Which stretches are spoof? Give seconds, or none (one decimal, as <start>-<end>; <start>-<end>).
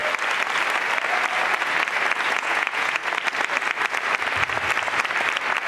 2.3-3.0